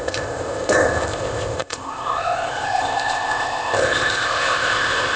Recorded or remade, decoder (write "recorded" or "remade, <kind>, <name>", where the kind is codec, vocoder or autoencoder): remade, codec, ZipCodec